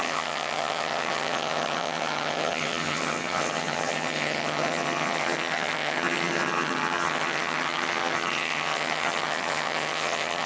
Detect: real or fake fake